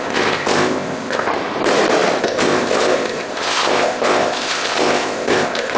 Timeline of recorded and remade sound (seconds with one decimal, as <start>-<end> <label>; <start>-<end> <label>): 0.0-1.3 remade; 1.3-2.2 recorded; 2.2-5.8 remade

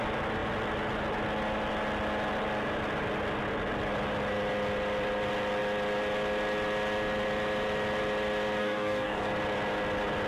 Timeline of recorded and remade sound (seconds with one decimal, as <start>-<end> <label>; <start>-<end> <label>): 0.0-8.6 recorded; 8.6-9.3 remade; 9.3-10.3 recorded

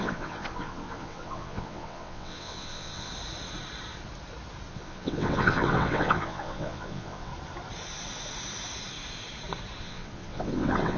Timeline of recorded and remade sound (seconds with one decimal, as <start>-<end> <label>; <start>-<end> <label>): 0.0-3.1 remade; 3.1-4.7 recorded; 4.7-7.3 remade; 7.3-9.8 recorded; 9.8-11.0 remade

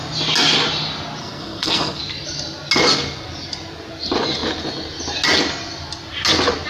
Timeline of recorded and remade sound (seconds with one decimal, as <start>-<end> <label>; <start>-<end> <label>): 0.0-1.2 recorded; 1.2-2.0 remade; 2.0-6.7 recorded